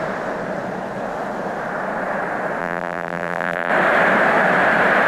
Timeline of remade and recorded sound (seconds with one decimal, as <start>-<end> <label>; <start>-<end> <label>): 0.0-2.6 recorded; 2.6-3.7 remade; 3.7-5.1 recorded